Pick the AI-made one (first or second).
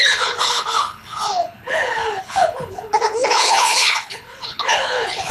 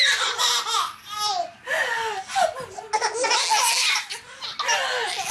first